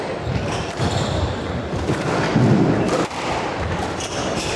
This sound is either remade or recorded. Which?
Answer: remade